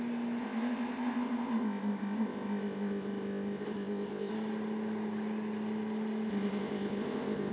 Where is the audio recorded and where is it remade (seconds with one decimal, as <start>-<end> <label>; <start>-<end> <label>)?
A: 0.0-0.4 recorded; 0.4-4.3 remade; 4.3-6.3 recorded; 6.3-7.5 remade